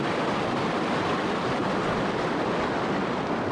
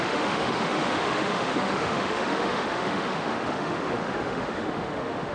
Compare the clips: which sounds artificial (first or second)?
second